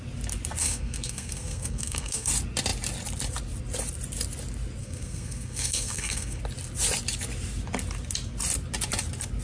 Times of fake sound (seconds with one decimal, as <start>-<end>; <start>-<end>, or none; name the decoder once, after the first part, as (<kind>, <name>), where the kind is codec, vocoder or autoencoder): 0.6-2.3 (codec, SNAC); 4.8-6.4